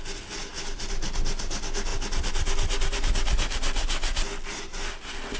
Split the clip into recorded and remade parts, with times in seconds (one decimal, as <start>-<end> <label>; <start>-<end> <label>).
0.0-5.4 recorded